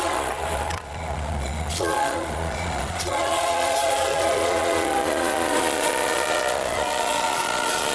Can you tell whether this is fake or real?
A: fake